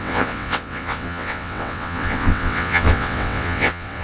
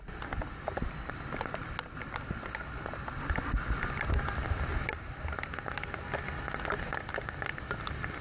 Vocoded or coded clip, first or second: first